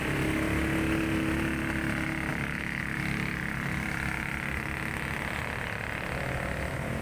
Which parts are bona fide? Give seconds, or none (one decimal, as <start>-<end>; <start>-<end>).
0.0-2.3; 2.8-7.0